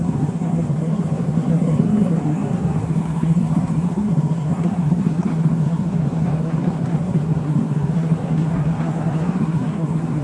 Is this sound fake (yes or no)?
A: yes